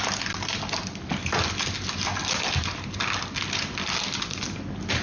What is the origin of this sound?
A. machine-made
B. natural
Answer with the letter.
B